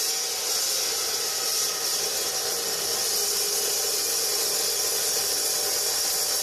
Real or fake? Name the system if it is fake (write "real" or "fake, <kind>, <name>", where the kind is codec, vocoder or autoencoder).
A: real